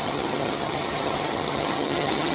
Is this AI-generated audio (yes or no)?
yes